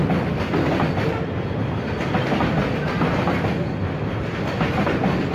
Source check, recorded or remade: recorded